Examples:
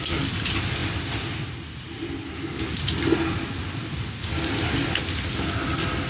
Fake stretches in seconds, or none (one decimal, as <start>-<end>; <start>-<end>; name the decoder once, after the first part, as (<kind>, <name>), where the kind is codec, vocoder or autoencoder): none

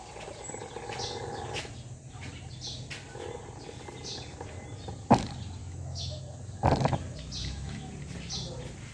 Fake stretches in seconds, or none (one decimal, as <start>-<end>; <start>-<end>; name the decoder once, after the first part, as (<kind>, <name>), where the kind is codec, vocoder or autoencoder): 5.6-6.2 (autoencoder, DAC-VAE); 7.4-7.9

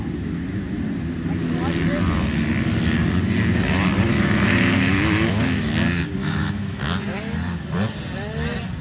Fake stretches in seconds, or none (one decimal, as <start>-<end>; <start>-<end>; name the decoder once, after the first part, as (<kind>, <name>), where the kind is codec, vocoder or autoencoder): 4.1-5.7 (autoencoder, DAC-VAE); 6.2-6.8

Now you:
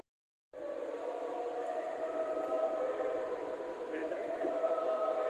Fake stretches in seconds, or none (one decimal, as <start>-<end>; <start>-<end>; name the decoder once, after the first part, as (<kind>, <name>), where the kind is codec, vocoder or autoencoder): 4.0-4.7 (autoencoder, DAC-VAE)

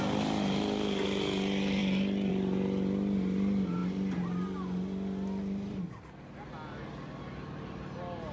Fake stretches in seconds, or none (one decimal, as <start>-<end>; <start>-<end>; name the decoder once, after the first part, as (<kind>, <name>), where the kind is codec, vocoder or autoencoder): none

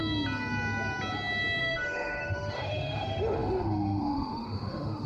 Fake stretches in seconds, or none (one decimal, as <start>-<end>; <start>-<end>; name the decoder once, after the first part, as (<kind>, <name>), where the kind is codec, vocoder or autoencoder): 1.6-5.1 (autoencoder, DAC-VAE)

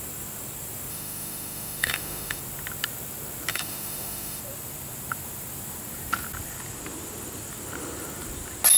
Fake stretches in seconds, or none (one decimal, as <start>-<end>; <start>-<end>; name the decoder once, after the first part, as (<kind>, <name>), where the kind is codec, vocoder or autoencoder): 0.9-2.4 (autoencoder, DAC-VAE); 3.5-4.4